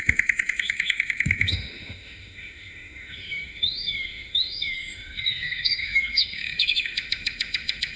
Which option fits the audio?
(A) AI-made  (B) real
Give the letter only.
A